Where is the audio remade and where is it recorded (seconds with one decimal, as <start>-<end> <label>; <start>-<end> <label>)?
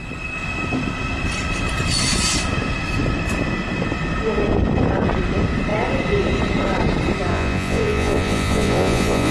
0.0-7.3 recorded; 7.3-9.3 remade